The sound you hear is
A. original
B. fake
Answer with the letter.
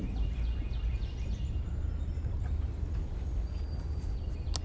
A